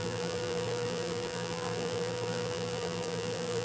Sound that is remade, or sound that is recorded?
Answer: remade